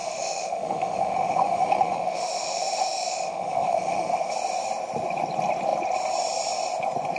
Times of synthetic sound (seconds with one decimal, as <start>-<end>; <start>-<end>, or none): 0.0-4.3